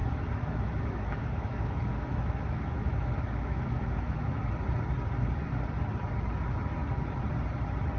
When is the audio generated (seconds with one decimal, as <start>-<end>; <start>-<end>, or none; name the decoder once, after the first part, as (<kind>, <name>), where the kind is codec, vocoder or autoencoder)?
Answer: 0.0-4.3 (autoencoder, DAC-VAE)